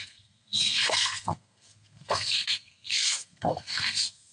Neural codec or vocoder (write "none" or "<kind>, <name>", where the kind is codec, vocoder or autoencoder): codec, SNAC